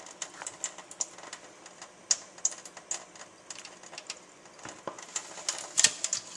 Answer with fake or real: real